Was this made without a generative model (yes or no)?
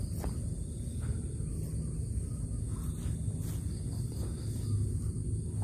yes